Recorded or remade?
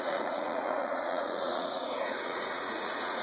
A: remade